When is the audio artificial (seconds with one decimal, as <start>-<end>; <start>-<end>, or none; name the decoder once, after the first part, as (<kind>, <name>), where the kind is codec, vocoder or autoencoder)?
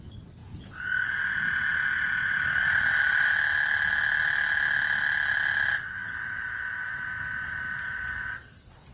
0.4-2.4 (vocoder, Vocos)